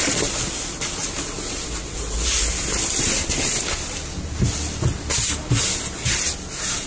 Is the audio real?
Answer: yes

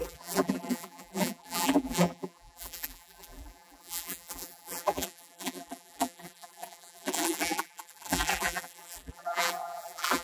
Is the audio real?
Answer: no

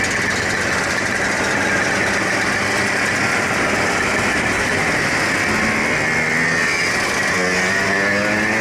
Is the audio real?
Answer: yes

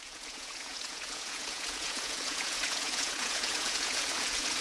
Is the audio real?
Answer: no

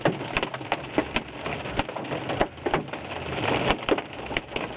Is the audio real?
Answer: yes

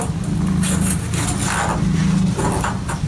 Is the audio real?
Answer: yes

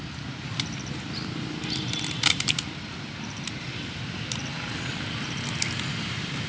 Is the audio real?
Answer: yes